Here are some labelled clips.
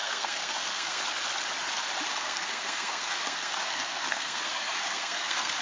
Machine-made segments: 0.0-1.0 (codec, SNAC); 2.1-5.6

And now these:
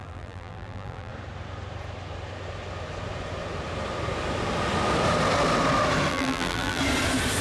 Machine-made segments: 0.0-1.1 (vocoder, BigVGAN v2); 6.1-6.8